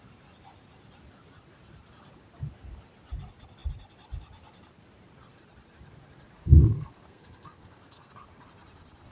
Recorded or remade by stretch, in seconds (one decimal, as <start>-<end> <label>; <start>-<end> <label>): 0.0-6.4 recorded; 6.4-8.1 remade; 8.1-9.1 recorded